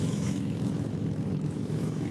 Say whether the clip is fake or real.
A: fake